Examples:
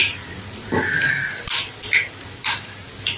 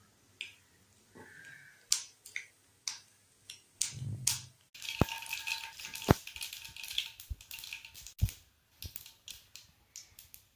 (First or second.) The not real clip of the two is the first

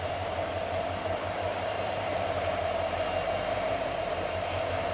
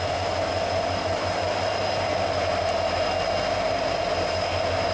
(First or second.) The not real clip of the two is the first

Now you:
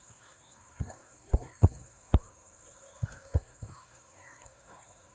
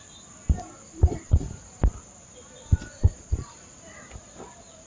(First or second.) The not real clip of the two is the first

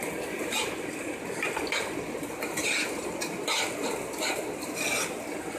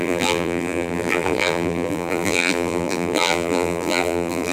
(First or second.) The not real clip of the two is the second